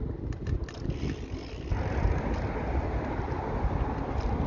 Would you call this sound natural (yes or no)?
yes